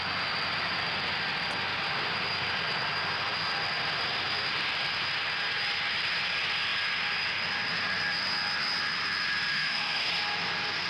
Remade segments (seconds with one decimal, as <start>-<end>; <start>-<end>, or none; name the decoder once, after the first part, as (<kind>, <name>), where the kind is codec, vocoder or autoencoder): 9.5-10.1 (autoencoder, DAC-VAE)